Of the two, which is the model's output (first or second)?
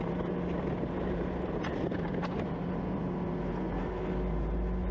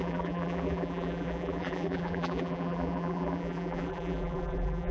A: second